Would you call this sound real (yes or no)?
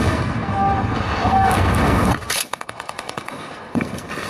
no